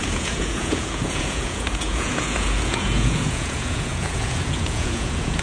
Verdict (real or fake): fake